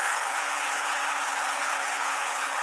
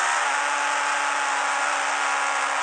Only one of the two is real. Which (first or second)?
second